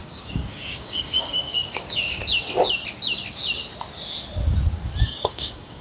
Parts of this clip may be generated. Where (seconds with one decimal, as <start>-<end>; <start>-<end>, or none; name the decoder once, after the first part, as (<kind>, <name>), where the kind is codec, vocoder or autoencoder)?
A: 0.0-2.2 (codec, DAC); 5.0-5.8